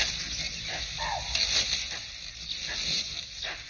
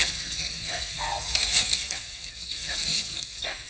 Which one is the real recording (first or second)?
first